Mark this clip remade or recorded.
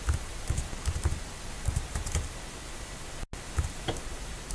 recorded